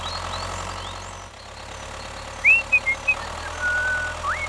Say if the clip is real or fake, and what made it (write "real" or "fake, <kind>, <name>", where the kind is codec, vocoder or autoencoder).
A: real